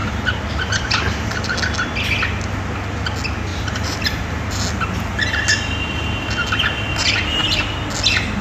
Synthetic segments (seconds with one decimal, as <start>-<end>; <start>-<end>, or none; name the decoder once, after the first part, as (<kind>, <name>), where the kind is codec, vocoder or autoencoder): 0.0-1.5 (vocoder, BigVGAN v2); 3.5-4.6